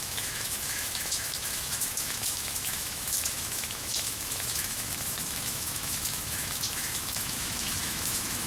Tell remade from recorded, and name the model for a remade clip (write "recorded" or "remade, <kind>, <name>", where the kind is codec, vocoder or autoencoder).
remade, autoencoder, DAC-VAE